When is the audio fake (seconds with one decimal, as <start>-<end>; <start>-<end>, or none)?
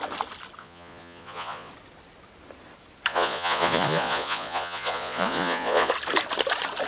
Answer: 0.6-1.7; 3.1-5.9